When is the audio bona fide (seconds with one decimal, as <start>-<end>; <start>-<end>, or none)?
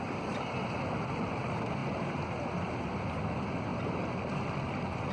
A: 0.0-5.1